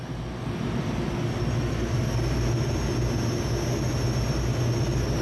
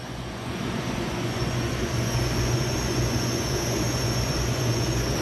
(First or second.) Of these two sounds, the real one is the first